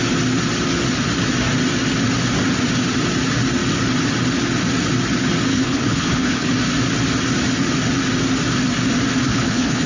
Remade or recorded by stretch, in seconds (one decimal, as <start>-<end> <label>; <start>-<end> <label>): 0.0-5.5 recorded; 5.5-6.5 remade; 6.5-9.2 recorded; 9.2-9.9 remade